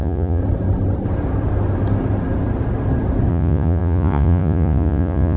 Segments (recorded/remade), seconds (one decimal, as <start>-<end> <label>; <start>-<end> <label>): 0.0-0.4 remade; 0.4-3.3 recorded; 3.3-5.4 remade